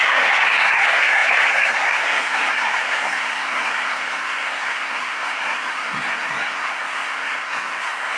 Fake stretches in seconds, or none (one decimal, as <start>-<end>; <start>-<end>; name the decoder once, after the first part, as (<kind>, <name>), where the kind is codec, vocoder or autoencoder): 0.0-8.2 (codec, SNAC)